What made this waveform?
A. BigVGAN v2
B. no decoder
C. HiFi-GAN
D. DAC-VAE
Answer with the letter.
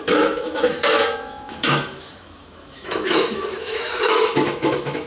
D